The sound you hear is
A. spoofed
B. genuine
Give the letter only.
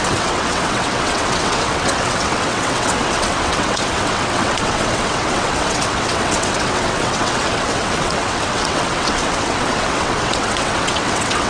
A